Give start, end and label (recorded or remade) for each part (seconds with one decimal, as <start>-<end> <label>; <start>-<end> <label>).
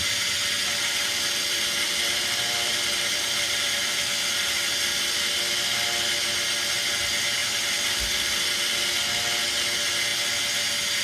0.0-0.6 recorded; 0.6-4.7 remade; 4.7-7.4 recorded; 7.4-8.8 remade; 8.8-11.0 recorded